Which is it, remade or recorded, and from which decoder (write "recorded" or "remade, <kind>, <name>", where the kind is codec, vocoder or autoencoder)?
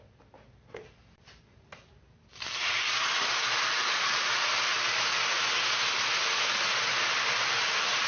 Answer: recorded